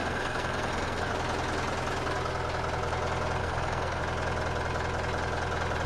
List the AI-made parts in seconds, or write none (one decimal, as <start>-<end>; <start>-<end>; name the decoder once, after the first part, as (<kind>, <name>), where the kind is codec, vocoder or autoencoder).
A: 0.0-1.1 (codec, SNAC); 3.4-4.0